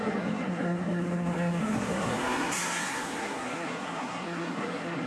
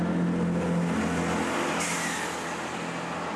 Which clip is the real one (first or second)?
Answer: second